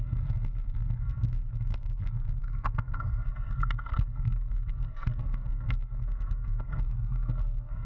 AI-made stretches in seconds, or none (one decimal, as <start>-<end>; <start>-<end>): 0.0-7.8